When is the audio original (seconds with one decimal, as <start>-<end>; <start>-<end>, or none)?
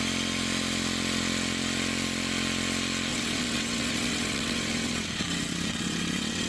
0.0-3.1